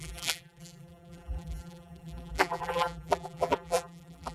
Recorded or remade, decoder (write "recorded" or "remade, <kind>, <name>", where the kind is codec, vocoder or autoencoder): remade, vocoder, BigVGAN v2